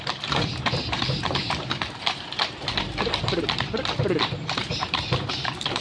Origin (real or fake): fake